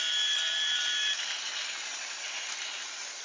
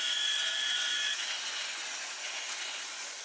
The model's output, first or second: second